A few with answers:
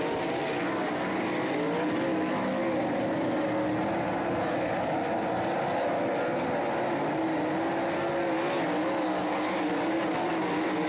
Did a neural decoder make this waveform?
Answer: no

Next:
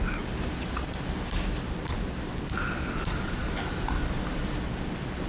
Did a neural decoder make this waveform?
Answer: no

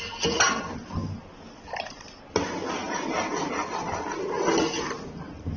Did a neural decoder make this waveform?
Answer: no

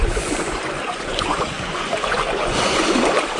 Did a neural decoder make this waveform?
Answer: yes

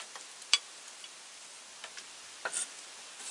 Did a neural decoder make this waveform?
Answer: no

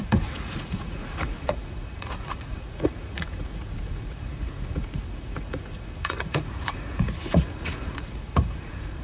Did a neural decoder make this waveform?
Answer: yes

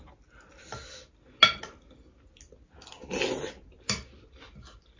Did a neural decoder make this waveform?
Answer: no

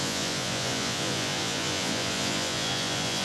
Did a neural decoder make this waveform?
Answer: yes